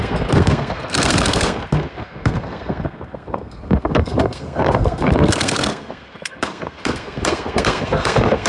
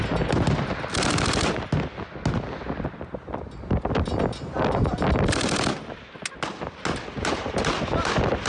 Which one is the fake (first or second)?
first